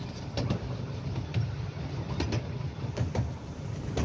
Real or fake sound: real